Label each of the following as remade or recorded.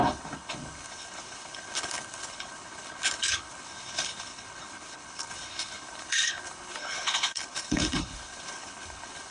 remade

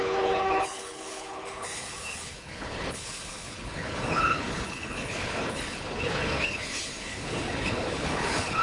remade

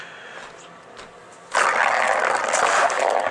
recorded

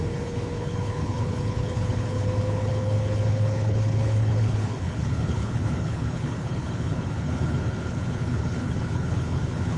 remade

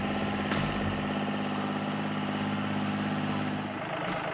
recorded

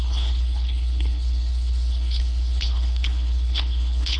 remade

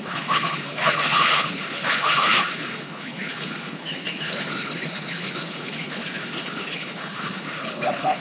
remade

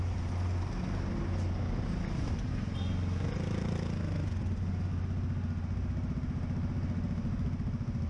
recorded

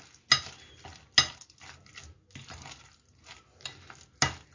recorded